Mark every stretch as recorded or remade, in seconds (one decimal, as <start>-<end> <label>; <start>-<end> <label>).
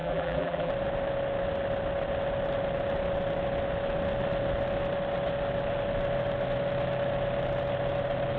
0.0-0.7 remade; 0.7-8.4 recorded